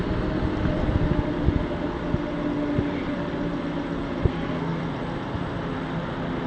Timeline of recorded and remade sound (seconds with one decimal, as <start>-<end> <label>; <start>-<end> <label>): 0.0-4.3 recorded; 4.3-4.8 remade; 4.8-6.5 recorded

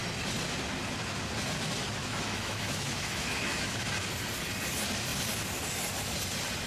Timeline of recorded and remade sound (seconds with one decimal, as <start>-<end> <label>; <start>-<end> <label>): 0.0-2.0 recorded; 2.0-3.9 remade; 3.9-6.7 recorded